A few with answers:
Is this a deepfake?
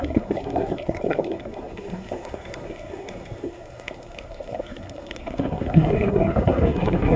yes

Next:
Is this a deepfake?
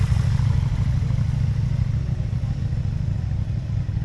no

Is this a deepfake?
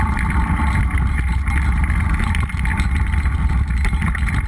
no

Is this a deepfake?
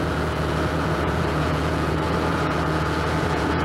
yes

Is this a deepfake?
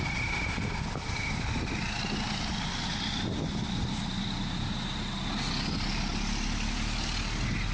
no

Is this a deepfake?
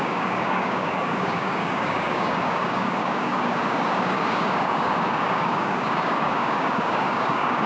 yes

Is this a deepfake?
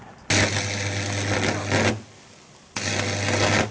no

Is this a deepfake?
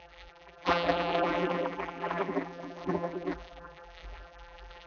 yes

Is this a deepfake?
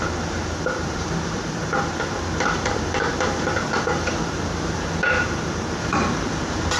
yes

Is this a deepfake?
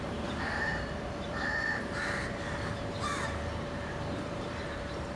yes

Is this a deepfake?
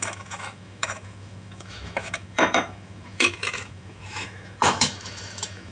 yes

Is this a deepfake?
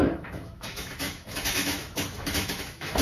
yes